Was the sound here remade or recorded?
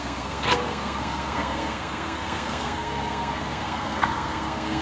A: remade